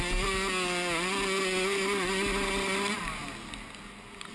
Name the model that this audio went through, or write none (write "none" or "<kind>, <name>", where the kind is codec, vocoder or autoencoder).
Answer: none